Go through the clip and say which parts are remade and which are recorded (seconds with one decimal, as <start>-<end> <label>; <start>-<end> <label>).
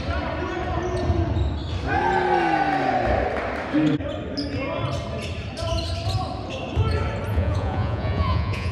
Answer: 0.0-7.3 recorded; 7.3-8.7 remade